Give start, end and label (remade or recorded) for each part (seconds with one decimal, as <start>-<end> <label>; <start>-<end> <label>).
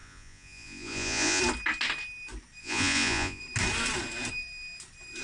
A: 0.0-1.4 remade; 1.4-2.6 recorded; 2.6-3.4 remade; 3.4-5.2 recorded